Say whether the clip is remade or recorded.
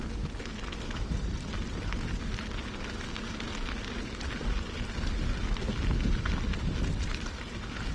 recorded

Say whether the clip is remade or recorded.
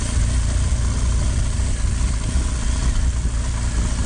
recorded